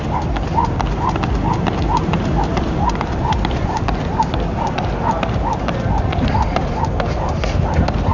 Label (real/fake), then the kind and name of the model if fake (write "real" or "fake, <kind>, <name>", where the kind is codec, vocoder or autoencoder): real